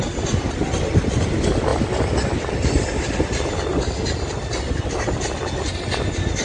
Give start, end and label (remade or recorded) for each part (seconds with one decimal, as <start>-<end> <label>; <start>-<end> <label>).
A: 0.0-6.4 recorded